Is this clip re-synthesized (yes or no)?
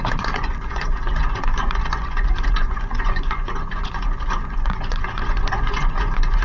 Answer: yes